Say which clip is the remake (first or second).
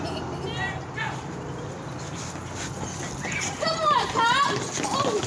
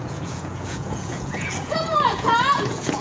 second